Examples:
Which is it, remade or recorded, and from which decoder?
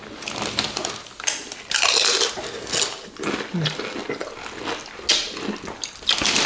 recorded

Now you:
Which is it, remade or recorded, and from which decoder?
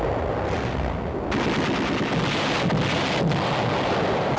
recorded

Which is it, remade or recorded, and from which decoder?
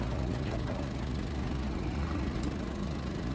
remade, vocoder, Vocos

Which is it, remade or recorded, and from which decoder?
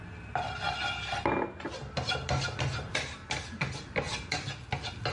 recorded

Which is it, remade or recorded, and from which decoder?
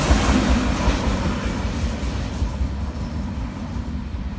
recorded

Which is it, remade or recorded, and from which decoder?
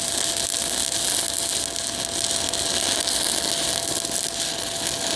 recorded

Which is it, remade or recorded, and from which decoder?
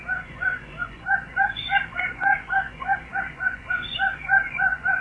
remade, vocoder, Vocos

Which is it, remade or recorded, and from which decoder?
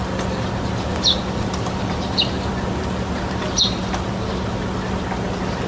recorded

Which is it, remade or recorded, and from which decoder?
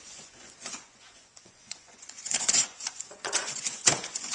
remade, vocoder, Vocos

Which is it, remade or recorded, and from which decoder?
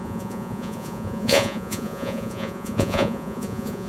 remade, vocoder, Vocos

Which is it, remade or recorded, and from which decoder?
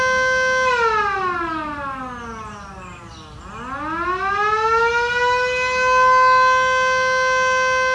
recorded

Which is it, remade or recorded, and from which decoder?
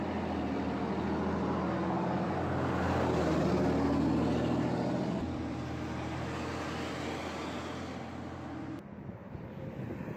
recorded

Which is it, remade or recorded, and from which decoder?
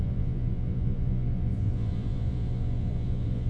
remade, vocoder, Vocos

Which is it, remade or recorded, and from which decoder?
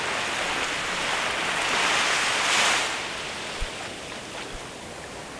recorded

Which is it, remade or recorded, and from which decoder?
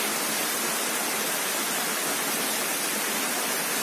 recorded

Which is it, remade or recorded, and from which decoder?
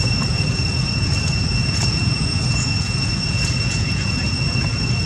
remade, vocoder, Vocos